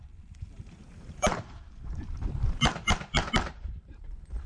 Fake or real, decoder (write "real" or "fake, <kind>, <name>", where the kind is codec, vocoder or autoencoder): fake, vocoder, BigVGAN v2